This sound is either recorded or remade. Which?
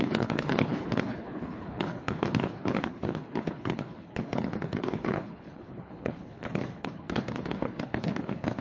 remade